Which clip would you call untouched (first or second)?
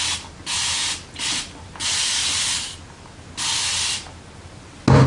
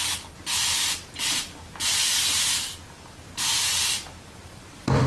first